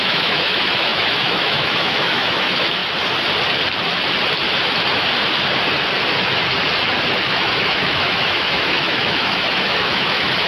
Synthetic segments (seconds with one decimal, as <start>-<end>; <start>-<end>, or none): 0.0-2.8; 7.3-10.5